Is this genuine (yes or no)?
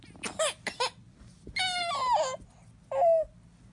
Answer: yes